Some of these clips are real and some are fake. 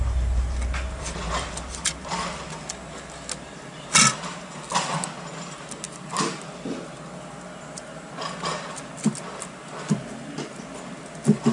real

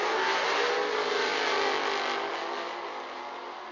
real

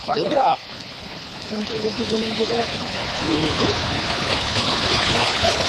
fake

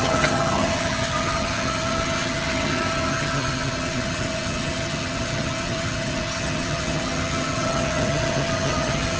fake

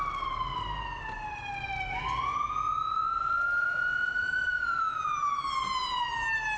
real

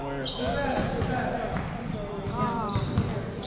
real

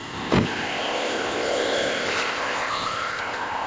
fake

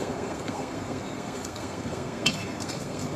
fake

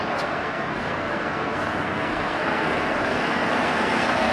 fake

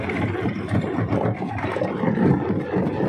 fake